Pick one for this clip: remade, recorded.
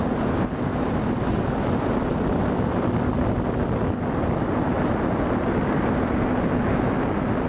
recorded